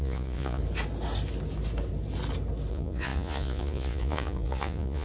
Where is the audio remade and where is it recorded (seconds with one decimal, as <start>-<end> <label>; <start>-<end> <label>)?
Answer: 0.0-0.6 remade; 0.6-2.7 recorded; 2.7-5.0 remade